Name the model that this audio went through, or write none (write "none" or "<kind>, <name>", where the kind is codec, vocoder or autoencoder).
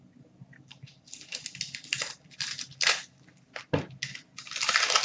none